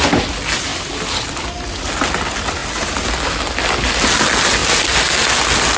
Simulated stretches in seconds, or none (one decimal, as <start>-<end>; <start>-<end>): none